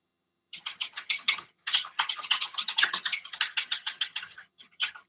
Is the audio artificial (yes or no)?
yes